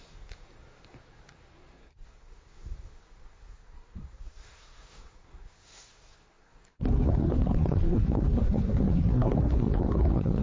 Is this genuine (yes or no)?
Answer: no